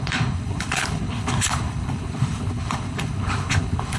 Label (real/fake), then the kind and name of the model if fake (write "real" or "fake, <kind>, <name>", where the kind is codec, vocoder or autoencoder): fake, codec, HILCodec